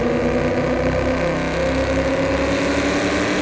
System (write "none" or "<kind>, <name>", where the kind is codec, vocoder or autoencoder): none